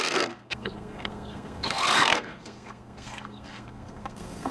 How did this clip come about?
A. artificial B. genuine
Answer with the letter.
A